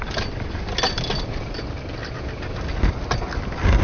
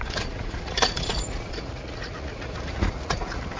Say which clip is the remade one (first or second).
second